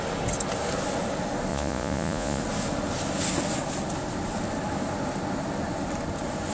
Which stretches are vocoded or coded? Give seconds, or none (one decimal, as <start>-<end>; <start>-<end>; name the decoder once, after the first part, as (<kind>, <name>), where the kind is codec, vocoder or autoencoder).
1.5-2.4 (vocoder, Vocos)